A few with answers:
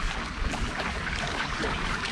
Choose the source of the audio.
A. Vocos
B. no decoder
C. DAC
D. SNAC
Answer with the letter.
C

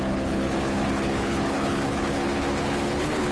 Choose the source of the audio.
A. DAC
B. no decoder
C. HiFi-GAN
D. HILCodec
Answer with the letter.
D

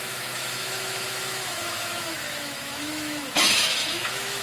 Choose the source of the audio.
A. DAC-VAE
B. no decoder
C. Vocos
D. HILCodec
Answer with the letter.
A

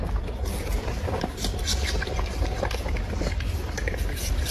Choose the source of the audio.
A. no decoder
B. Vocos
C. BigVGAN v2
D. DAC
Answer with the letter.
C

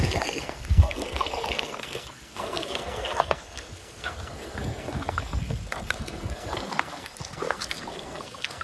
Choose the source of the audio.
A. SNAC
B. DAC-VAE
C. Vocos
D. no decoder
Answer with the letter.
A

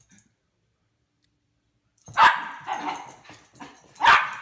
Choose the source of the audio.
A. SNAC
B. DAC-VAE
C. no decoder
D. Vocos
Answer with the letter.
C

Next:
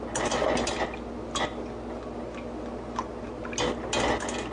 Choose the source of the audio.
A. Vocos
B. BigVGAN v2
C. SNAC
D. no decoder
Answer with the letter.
D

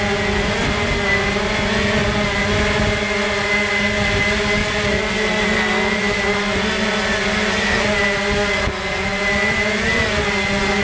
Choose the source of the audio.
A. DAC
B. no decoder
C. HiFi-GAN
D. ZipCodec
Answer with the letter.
B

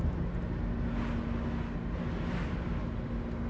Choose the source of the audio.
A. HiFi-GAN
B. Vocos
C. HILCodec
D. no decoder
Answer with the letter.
D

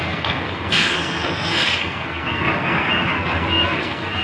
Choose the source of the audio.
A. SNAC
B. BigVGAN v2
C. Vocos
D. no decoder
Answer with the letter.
A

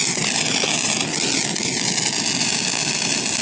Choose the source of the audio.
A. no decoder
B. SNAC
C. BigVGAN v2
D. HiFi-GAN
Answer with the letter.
A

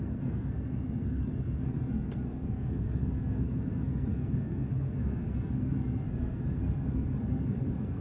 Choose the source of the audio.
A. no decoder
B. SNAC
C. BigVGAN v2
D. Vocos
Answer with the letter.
B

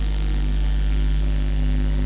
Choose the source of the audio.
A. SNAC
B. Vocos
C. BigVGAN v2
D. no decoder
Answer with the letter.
A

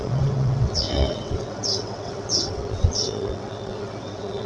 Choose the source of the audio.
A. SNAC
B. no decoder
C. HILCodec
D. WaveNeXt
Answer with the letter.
D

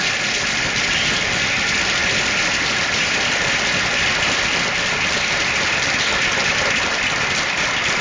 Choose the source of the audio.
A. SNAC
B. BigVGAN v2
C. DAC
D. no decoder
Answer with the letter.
D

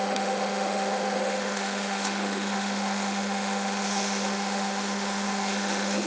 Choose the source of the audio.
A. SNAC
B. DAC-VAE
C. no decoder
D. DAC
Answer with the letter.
B